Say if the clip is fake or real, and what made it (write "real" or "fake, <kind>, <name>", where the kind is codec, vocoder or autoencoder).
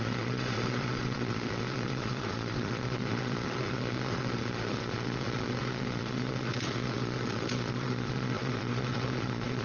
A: fake, vocoder, Vocos